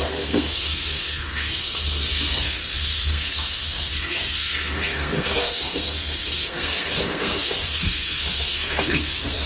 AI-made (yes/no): yes